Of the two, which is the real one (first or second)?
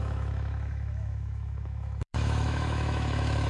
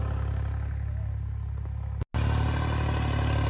second